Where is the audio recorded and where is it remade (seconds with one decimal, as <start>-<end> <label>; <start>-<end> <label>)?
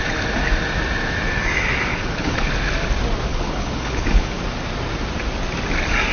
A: 0.0-1.9 recorded; 1.9-2.5 remade; 2.5-3.3 recorded; 3.3-4.4 remade; 4.4-6.1 recorded